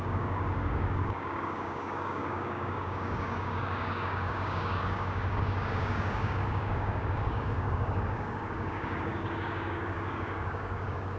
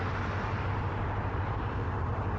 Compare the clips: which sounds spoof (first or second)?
first